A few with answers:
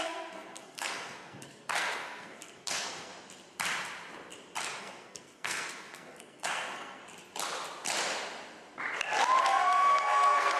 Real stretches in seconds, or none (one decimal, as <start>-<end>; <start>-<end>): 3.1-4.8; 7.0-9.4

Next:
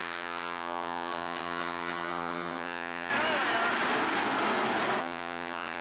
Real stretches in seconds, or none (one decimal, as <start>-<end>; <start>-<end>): 3.1-5.0

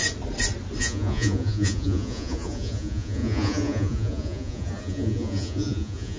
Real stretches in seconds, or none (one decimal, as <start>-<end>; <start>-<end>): 0.0-0.8